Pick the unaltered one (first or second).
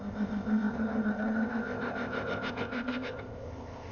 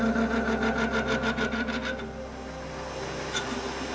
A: second